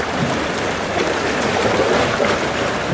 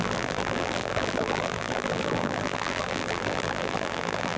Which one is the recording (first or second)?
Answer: first